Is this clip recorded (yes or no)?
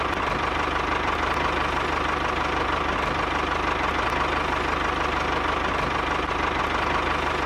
yes